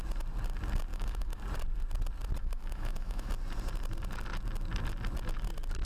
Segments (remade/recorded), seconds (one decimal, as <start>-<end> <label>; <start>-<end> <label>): 0.0-0.9 recorded; 0.9-1.4 remade; 1.4-2.4 recorded; 2.4-3.3 remade; 3.3-5.9 recorded